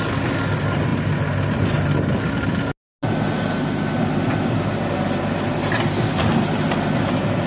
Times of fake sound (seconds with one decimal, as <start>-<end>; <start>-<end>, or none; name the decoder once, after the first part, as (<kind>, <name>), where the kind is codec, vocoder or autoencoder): none